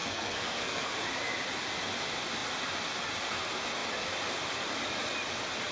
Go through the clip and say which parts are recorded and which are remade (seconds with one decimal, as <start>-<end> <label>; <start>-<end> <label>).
0.0-0.9 remade; 0.9-5.7 recorded